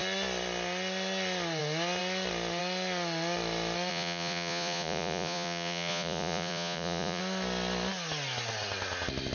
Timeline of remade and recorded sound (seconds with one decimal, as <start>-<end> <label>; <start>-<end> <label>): 0.0-3.9 recorded; 3.9-7.2 remade; 7.2-9.3 recorded